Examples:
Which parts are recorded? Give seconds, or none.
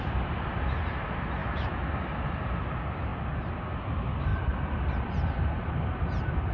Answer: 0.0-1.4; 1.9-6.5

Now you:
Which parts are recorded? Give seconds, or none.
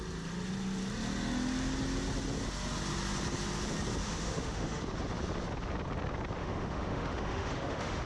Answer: 0.0-4.0; 4.8-6.4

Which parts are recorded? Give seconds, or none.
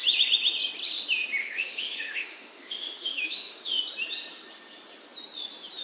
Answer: 0.0-1.4; 3.8-5.8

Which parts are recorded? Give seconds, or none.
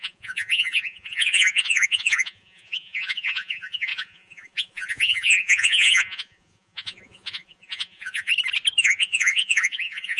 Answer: 8.3-8.8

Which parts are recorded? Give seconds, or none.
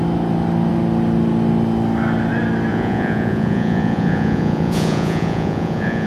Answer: 0.0-2.7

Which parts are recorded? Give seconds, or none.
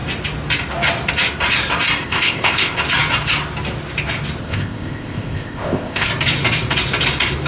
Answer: 0.0-2.0; 2.8-4.4; 6.1-7.5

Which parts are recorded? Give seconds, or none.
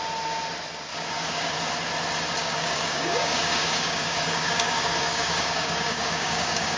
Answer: 0.0-0.9; 1.5-2.4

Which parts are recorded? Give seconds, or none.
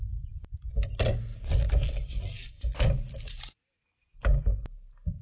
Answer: 0.0-1.3; 4.4-5.2